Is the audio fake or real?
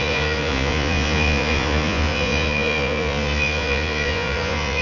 fake